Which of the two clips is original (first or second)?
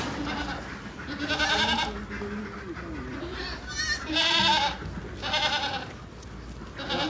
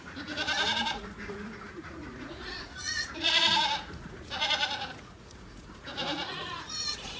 first